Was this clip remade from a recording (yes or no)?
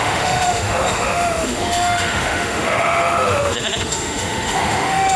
yes